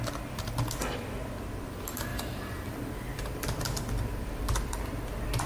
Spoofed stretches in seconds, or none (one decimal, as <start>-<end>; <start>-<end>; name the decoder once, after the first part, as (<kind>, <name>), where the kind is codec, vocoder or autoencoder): 2.1-5.5 (vocoder, BigVGAN v2)